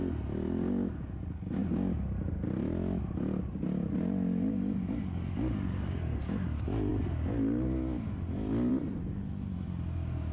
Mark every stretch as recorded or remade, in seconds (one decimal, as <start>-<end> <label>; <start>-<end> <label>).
0.0-10.3 recorded